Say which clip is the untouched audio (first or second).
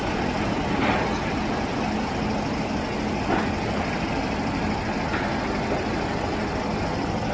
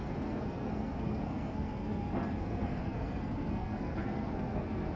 first